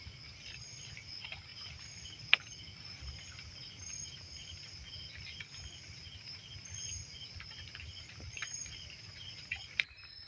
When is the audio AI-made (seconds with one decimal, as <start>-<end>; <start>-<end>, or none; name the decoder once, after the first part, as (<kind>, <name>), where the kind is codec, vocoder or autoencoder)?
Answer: none